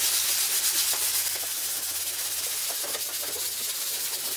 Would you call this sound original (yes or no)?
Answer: yes